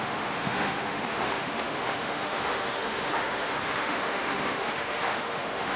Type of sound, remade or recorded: remade